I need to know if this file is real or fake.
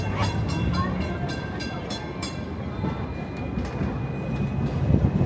real